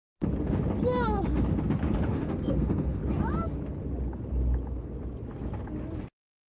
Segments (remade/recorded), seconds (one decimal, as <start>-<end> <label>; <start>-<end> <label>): 0.0-2.1 recorded; 2.1-3.0 remade; 3.0-6.5 recorded